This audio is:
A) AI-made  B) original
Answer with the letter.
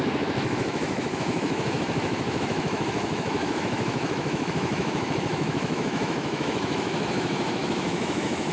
A